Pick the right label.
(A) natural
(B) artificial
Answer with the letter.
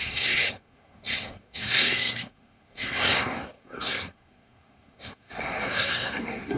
B